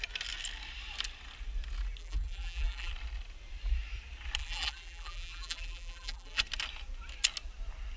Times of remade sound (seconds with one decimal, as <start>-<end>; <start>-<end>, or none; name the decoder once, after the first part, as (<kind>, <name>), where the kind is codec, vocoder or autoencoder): 2.0-2.9 (vocoder, BigVGAN v2); 4.4-6.4